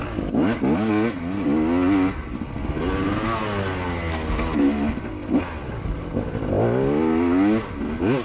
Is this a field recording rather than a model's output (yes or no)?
yes